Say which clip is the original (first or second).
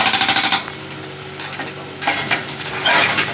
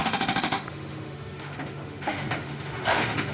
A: first